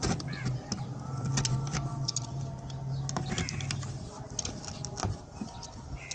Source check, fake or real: real